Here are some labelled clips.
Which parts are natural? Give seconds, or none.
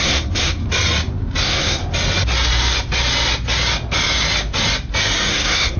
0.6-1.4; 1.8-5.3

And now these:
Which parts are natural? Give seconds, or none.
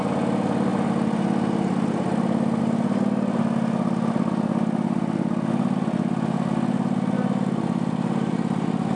0.0-9.0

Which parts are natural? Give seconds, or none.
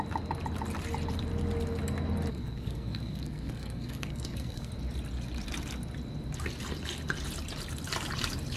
0.0-2.3; 4.7-8.6